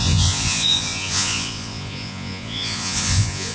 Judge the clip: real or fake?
fake